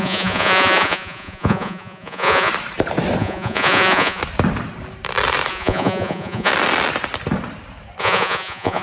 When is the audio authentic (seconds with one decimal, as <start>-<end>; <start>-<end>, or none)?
2.5-3.2; 4.2-5.5; 6.5-8.0